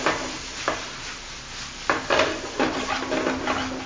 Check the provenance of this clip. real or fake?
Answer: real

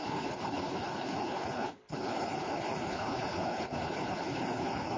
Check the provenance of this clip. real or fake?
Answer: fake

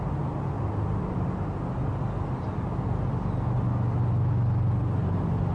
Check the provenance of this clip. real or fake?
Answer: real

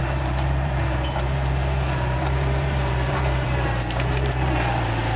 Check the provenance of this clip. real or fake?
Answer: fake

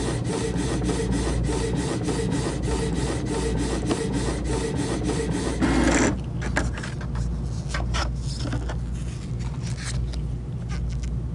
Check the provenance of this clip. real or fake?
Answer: real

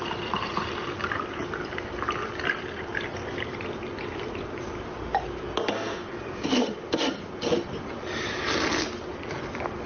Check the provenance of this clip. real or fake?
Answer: real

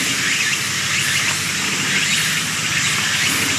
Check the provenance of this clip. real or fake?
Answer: real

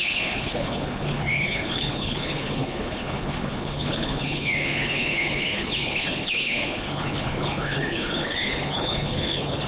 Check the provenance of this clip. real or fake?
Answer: fake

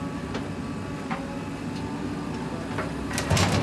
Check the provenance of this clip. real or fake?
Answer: real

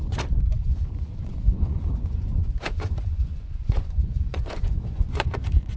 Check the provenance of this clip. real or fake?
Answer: fake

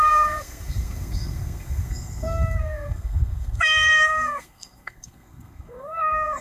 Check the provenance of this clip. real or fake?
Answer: fake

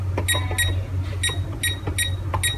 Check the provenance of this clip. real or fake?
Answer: real